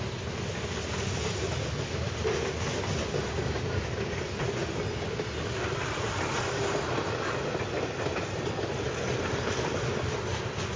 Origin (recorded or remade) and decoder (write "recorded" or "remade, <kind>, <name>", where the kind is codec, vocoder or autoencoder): recorded